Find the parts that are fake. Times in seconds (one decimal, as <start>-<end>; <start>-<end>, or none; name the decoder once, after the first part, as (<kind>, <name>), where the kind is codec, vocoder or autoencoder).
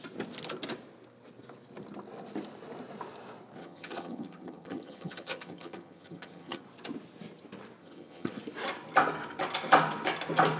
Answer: 3.6-6.6 (vocoder, HiFi-GAN); 7.8-8.4